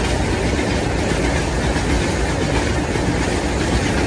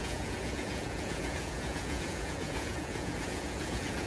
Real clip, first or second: first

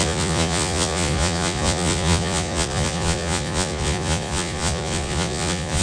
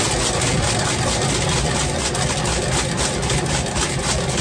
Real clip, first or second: second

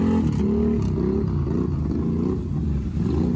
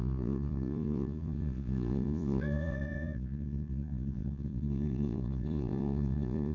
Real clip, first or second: first